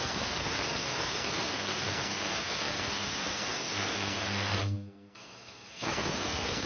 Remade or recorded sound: remade